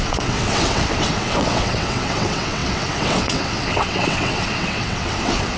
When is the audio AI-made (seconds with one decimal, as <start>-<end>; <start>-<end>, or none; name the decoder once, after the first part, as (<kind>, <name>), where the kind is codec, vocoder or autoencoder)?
0.0-5.6 (vocoder, WaveNeXt)